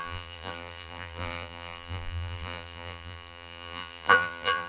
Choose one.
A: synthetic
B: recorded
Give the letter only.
A